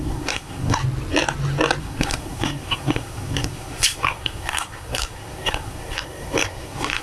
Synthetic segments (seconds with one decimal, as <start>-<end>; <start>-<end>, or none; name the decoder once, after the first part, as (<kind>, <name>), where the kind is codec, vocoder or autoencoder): 0.0-0.8 (codec, SNAC); 1.8-7.0